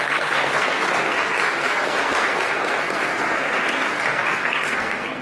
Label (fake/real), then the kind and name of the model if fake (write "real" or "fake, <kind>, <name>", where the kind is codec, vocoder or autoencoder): fake, codec, SNAC